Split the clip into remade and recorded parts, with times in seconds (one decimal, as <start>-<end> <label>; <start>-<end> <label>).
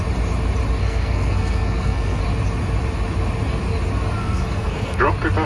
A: 0.0-0.8 recorded; 0.8-2.2 remade; 2.2-4.2 recorded; 4.2-5.0 remade; 5.0-5.5 recorded